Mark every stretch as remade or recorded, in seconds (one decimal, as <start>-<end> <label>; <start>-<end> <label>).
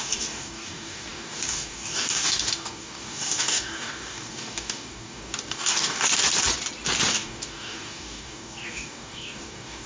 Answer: 0.0-6.2 remade; 6.2-7.1 recorded; 7.1-9.9 remade